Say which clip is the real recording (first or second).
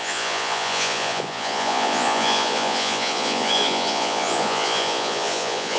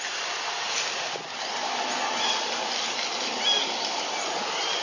second